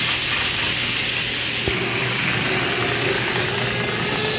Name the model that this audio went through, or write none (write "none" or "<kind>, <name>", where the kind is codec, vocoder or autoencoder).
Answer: none